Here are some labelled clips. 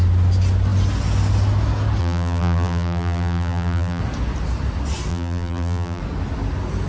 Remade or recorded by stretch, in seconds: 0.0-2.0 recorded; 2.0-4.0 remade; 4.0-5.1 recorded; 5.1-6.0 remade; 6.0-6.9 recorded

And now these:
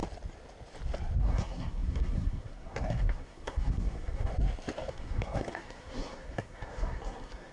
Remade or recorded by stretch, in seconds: 0.0-1.2 recorded; 1.2-4.3 remade; 4.3-4.9 recorded; 4.9-7.5 remade

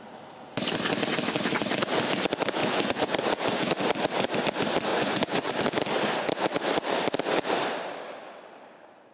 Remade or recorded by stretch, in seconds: 0.0-2.6 recorded; 2.6-3.2 remade; 3.2-4.9 recorded; 4.9-5.5 remade; 5.5-9.1 recorded